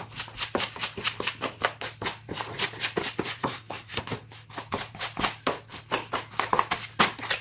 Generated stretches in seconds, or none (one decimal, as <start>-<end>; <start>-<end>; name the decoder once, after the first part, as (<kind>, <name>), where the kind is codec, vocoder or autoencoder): 3.4-4.0 (codec, SNAC)